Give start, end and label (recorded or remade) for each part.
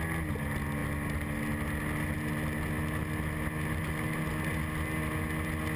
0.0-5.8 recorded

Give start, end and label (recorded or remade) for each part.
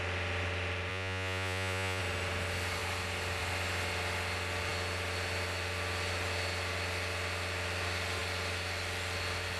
0.0-0.9 recorded; 0.9-2.0 remade; 2.0-9.6 recorded